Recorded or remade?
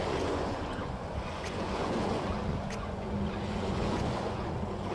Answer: remade